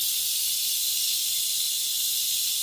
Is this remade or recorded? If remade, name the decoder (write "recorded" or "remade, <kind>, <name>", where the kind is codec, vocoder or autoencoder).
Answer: recorded